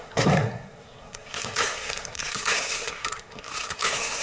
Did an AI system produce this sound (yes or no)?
yes